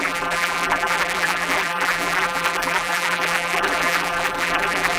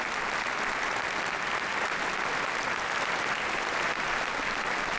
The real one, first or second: second